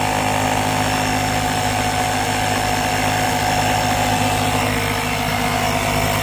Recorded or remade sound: recorded